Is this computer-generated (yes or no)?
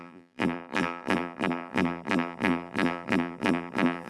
yes